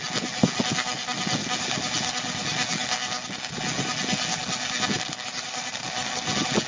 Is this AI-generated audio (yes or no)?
no